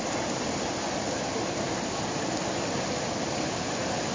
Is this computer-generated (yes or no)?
no